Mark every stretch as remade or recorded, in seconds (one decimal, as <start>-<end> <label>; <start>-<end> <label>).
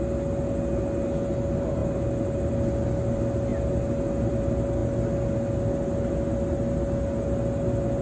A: 0.0-8.0 recorded